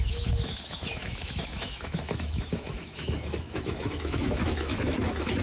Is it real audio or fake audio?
fake